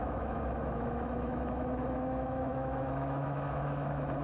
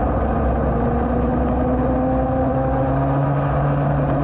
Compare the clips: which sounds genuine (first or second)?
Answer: second